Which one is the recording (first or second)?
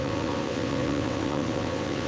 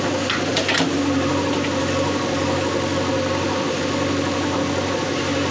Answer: second